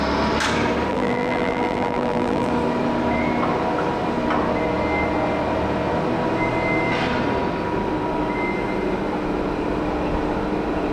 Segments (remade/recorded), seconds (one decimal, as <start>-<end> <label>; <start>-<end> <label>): 0.0-0.9 recorded; 0.9-2.5 remade; 2.5-10.9 recorded